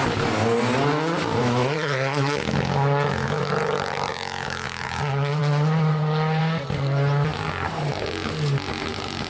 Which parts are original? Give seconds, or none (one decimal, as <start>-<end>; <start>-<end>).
0.0-1.4; 3.5-4.1; 5.0-9.3